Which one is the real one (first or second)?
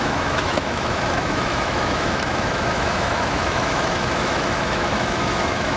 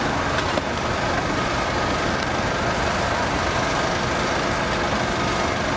second